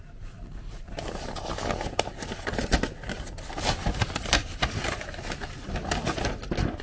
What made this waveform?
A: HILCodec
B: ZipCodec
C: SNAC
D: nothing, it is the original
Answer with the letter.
D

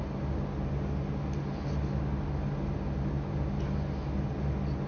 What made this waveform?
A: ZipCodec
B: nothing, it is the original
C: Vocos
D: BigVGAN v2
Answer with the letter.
B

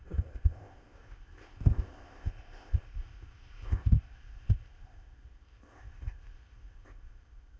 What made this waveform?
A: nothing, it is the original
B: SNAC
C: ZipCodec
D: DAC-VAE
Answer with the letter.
C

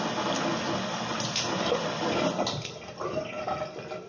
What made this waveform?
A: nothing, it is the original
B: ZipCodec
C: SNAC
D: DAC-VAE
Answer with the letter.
A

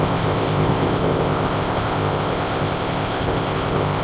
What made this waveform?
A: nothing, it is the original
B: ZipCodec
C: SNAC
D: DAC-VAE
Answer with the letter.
B